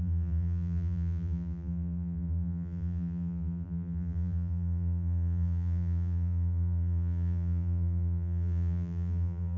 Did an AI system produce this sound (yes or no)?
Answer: yes